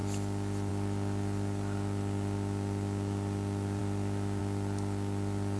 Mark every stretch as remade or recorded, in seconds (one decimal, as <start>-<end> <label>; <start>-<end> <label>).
0.0-5.6 recorded